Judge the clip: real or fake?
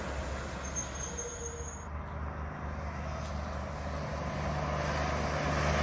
real